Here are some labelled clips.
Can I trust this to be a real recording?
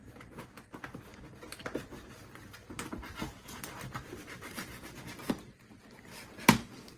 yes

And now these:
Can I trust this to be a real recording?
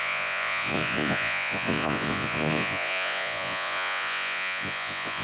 no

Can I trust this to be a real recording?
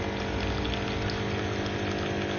yes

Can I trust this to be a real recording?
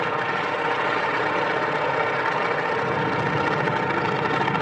yes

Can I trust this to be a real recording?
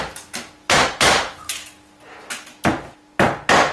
yes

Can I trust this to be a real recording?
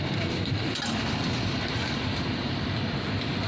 no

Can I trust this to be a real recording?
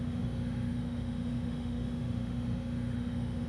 no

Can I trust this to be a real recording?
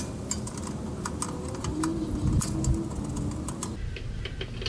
yes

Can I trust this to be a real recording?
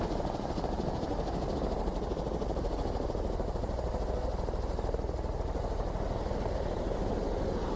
yes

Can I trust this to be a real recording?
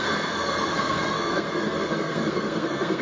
no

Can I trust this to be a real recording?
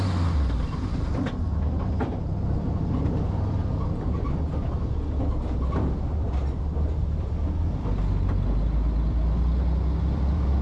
yes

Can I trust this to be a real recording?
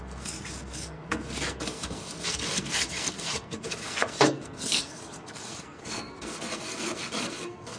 no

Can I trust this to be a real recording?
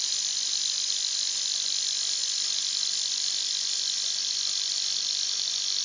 yes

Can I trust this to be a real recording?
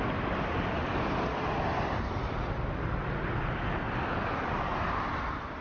yes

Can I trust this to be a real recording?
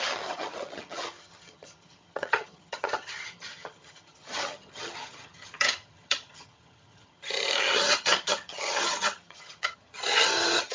no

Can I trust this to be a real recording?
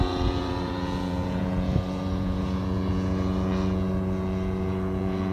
no